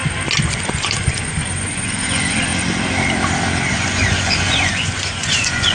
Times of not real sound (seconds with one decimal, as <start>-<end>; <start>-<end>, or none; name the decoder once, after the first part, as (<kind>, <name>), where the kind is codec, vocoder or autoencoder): 0.5-2.5 (vocoder, Vocos); 3.7-5.7